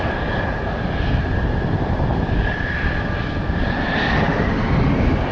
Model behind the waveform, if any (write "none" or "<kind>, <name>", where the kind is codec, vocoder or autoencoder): none